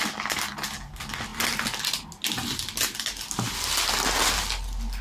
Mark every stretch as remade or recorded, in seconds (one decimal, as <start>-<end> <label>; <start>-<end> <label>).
0.0-5.0 recorded